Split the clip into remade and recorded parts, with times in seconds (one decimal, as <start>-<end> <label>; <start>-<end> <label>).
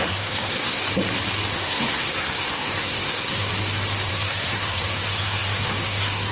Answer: 0.0-0.8 remade; 0.8-1.5 recorded; 1.5-3.5 remade; 3.5-4.1 recorded; 4.1-6.3 remade